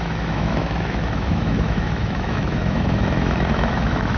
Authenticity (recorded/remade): remade